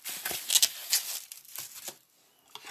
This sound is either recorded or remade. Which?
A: recorded